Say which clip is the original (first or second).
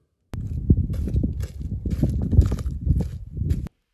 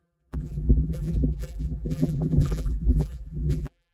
first